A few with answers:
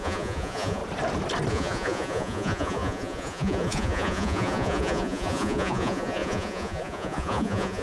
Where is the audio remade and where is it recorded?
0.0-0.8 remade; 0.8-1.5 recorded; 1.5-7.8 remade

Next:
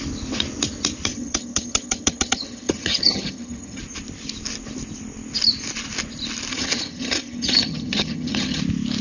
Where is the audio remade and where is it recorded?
0.0-1.1 recorded; 1.1-3.8 remade; 3.8-6.5 recorded; 6.5-8.6 remade; 8.6-9.0 recorded